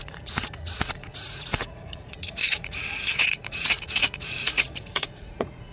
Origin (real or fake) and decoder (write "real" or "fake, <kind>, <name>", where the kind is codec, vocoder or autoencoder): fake, vocoder, Vocos